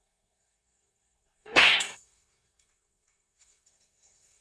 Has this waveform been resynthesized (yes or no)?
yes